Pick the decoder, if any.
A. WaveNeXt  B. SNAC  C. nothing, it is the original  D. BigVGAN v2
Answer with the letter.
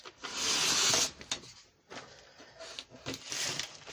C